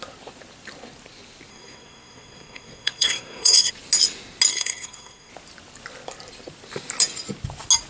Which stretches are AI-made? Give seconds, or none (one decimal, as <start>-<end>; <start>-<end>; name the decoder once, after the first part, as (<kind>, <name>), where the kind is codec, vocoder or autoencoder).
1.5-3.7 (codec, SNAC); 4.5-5.3